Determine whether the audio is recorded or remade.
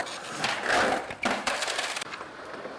recorded